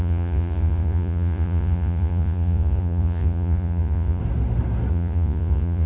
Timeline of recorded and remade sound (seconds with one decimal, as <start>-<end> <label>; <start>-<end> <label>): 0.0-4.2 remade; 4.2-4.9 recorded; 4.9-5.9 remade